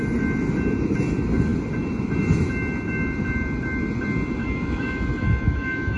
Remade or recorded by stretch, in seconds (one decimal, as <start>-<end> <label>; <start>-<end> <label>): 0.0-4.4 recorded; 4.4-6.0 remade